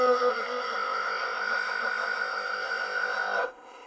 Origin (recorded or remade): remade